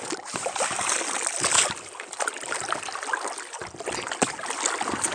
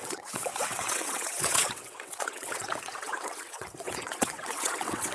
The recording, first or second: first